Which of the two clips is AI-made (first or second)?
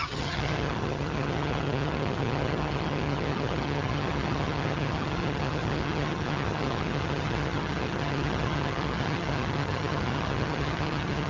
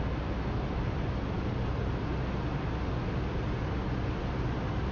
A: first